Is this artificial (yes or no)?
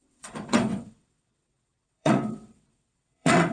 yes